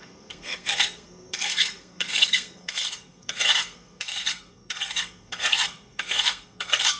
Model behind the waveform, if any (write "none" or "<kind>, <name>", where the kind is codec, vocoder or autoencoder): codec, SNAC